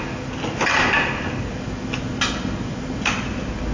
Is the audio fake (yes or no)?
no